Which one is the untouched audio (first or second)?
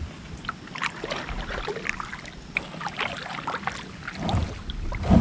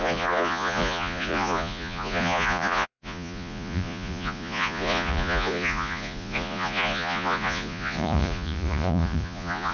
first